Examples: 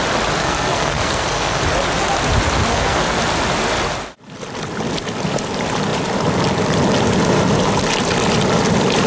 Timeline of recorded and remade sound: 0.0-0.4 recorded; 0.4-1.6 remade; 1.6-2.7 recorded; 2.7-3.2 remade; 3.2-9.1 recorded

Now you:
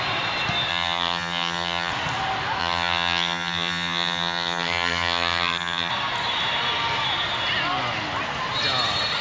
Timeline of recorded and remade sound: 0.0-0.7 recorded; 0.7-1.9 remade; 1.9-2.6 recorded; 2.6-5.9 remade; 5.9-9.2 recorded

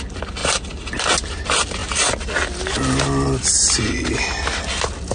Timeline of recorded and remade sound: 0.0-5.1 recorded

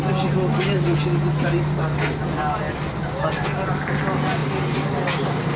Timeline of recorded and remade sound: 0.0-5.6 recorded

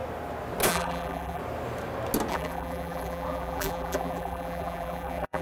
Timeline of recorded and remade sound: 0.0-0.7 recorded; 0.7-1.4 remade; 1.4-2.3 recorded; 2.3-5.4 remade